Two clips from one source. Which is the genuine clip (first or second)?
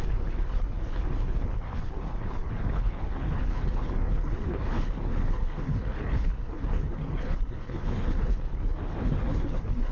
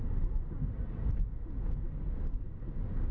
second